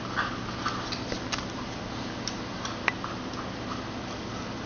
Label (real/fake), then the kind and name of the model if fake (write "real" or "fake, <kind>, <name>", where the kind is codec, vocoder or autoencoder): real